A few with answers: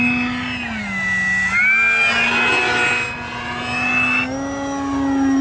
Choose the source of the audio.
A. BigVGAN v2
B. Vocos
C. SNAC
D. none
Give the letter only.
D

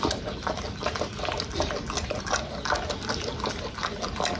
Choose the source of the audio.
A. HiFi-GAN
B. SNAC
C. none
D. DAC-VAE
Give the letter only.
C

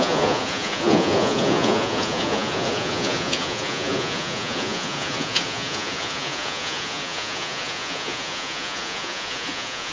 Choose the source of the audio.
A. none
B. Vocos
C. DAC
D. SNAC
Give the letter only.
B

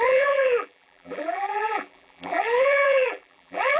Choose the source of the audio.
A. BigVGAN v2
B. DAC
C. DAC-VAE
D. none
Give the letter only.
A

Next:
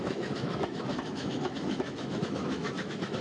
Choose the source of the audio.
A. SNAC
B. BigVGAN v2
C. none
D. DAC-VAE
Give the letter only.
D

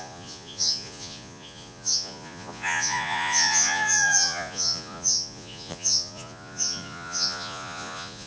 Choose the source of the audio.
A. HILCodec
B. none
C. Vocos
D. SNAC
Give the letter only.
C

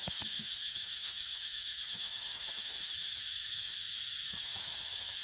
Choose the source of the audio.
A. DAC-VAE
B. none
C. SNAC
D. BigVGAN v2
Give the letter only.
A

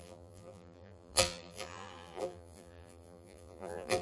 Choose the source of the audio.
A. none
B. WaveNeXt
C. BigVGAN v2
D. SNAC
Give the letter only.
C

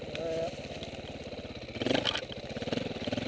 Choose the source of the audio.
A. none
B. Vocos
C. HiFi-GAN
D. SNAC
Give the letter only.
A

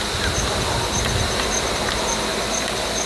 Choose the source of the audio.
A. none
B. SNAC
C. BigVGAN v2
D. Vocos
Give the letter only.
A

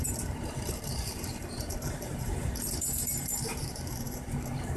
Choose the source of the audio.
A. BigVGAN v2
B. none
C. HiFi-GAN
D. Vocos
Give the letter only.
A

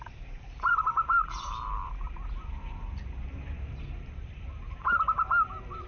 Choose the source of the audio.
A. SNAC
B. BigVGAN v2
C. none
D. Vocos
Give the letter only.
B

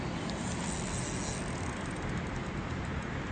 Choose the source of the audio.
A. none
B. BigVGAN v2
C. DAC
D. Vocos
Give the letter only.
A